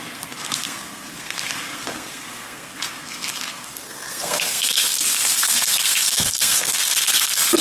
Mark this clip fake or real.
fake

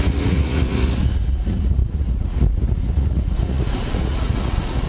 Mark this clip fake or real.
fake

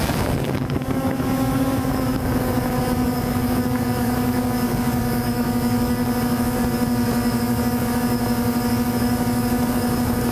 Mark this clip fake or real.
fake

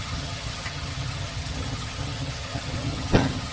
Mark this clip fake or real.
fake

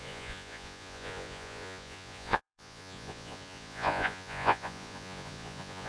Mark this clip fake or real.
fake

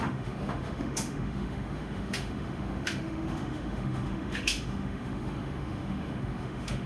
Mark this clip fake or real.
fake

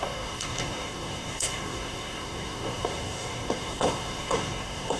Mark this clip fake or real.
fake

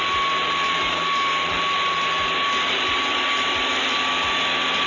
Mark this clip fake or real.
real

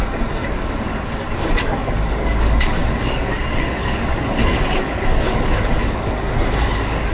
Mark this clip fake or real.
fake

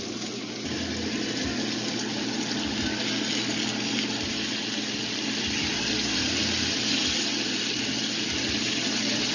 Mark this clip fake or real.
real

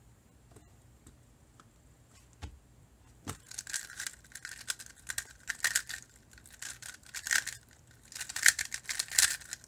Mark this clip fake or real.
real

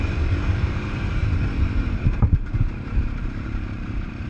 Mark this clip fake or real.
fake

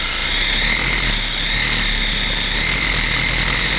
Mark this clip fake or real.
real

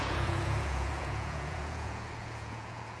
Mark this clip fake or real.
fake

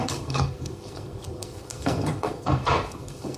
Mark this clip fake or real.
fake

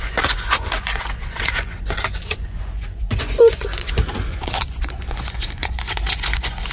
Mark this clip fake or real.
fake